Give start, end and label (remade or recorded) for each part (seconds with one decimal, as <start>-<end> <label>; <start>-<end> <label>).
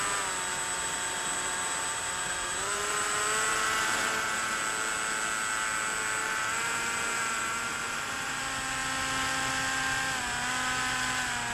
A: 0.0-0.5 recorded; 0.5-3.1 remade; 3.1-3.5 recorded; 3.5-4.6 remade; 4.6-6.2 recorded; 6.2-8.4 remade; 8.4-11.5 recorded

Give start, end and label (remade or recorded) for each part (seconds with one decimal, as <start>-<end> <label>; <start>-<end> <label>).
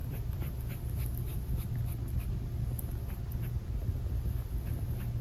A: 0.0-0.6 remade; 0.6-5.2 recorded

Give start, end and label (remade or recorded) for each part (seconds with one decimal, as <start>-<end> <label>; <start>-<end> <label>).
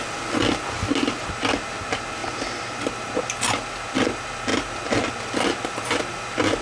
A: 0.0-2.2 recorded; 2.2-3.2 remade; 3.2-6.6 recorded